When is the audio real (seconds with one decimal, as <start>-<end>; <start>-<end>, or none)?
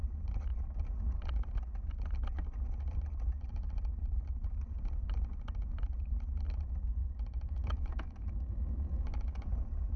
0.0-7.0; 9.5-10.0